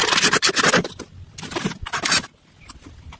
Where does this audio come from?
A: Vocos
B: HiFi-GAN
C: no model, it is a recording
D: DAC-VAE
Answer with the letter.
C